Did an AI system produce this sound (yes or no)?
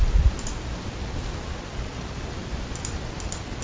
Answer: no